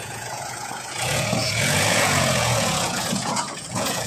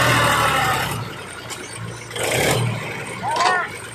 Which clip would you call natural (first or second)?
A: second